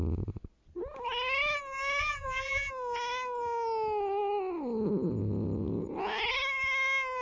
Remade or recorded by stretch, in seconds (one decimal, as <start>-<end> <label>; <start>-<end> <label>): 0.0-2.0 recorded; 2.0-2.7 remade; 2.7-7.2 recorded